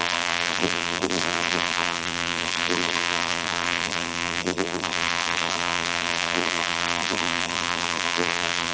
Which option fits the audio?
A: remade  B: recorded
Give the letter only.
A